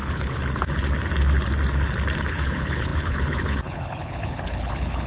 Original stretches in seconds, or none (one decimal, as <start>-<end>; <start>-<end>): 0.4-2.3